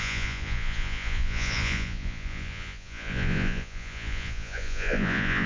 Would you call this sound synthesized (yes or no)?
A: yes